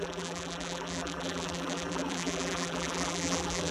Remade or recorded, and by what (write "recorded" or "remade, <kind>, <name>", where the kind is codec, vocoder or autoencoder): remade, vocoder, BigVGAN v2